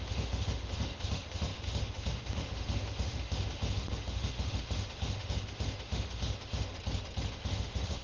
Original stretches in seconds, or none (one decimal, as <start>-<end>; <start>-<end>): 6.7-7.3